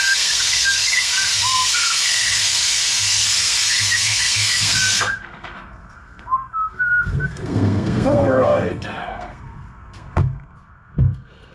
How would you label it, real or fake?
fake